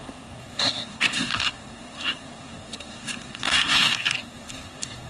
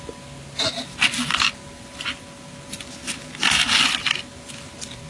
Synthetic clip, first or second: first